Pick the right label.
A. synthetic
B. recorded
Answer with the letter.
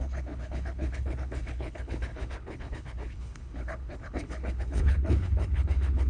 A